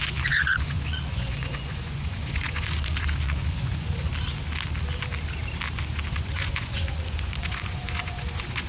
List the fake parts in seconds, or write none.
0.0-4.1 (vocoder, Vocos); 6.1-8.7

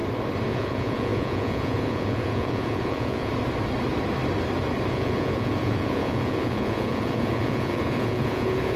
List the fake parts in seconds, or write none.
0.5-3.3 (vocoder, Vocos); 4.9-8.8

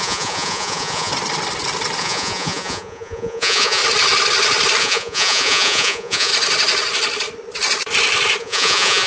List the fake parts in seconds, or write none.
0.0-1.1 (vocoder, Vocos); 2.0-3.8; 4.8-6.3; 8.4-9.1